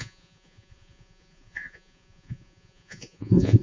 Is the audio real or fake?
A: fake